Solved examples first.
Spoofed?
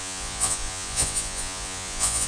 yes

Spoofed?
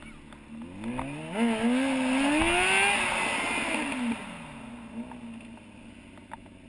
no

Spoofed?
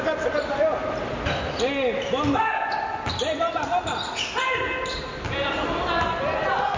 no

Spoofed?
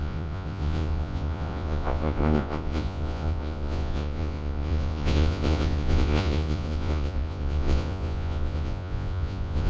yes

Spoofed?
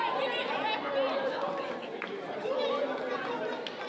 no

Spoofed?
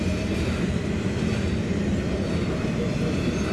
no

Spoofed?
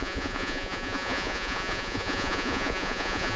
yes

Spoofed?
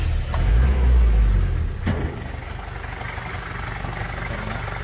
no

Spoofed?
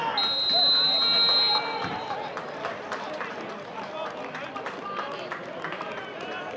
no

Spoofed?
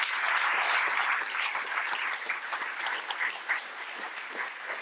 no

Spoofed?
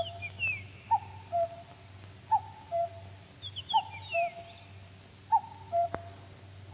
no